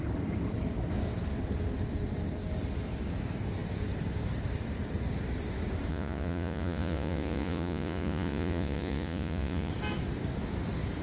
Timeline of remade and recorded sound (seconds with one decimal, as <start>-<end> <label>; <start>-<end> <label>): 0.0-5.9 recorded; 5.9-9.7 remade; 9.7-11.0 recorded